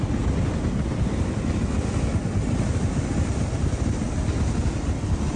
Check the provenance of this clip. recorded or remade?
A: recorded